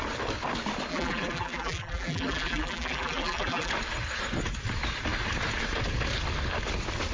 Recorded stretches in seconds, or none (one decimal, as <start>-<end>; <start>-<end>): 0.0-0.9; 3.7-7.1